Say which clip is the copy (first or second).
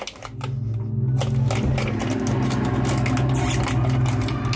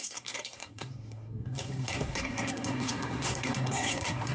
second